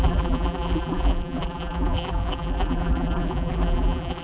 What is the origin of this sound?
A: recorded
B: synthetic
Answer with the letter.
B